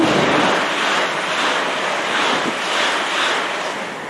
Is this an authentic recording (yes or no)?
yes